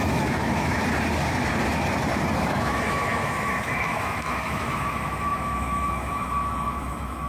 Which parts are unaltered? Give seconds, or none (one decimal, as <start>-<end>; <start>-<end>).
0.8-2.4